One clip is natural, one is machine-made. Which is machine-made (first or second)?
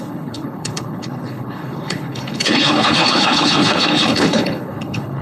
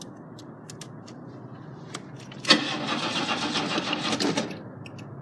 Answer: first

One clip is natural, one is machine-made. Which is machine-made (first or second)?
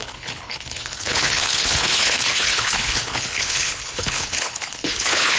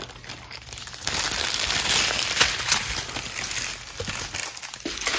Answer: first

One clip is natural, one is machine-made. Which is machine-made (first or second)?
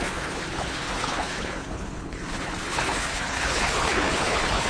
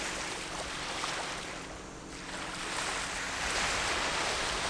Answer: first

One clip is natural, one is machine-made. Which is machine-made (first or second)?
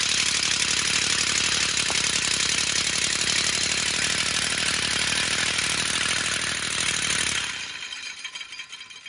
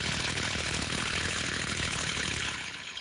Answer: second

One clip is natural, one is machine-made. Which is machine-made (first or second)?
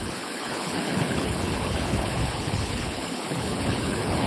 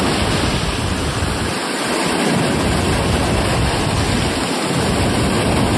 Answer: first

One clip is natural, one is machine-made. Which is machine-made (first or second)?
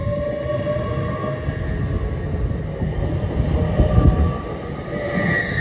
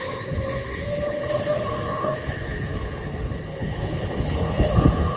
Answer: second